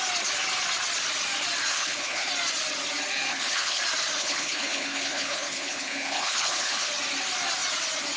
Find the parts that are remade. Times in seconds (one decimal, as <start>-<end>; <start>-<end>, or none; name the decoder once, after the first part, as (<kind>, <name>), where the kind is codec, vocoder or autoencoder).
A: 1.7-2.3 (codec, HILCodec); 3.3-3.8; 4.2-6.9